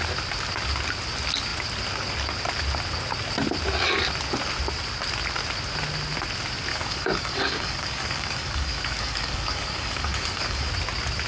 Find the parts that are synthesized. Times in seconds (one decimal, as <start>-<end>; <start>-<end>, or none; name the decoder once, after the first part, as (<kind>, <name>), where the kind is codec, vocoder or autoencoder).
6.7-10.7 (codec, DAC)